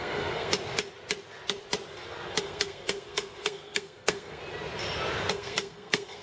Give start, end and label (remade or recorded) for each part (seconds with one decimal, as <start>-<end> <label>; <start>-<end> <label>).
0.0-0.5 remade; 0.5-2.4 recorded; 2.4-4.4 remade; 4.4-5.3 recorded; 5.3-6.2 remade